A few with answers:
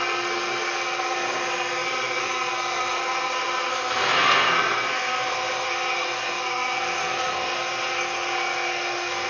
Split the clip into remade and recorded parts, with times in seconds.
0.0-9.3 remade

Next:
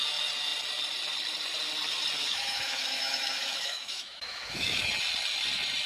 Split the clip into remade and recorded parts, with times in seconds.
0.0-2.2 recorded; 2.2-4.9 remade; 4.9-5.9 recorded

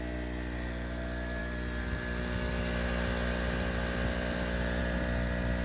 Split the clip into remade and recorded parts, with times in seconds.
0.0-5.6 recorded

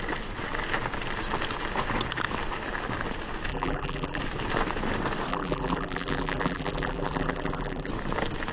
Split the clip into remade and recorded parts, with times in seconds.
0.0-3.5 recorded; 3.5-4.2 remade; 4.2-5.3 recorded; 5.3-7.9 remade; 7.9-8.5 recorded

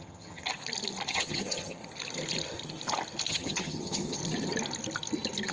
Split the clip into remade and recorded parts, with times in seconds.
0.0-0.5 remade; 0.5-1.1 recorded; 1.1-1.8 remade; 1.8-3.3 recorded; 3.3-4.2 remade; 4.2-5.5 recorded

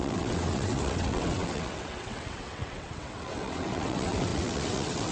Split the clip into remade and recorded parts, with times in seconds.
0.0-5.1 remade

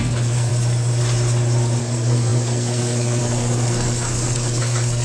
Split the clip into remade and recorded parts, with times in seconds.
0.0-0.5 remade; 0.5-1.8 recorded; 1.8-5.0 remade

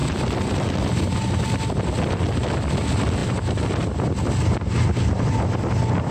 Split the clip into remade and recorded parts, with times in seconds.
0.0-6.1 recorded